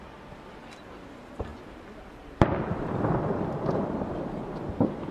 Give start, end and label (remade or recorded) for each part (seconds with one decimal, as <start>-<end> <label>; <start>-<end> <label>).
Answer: 0.0-1.5 recorded; 1.5-4.6 remade; 4.6-5.1 recorded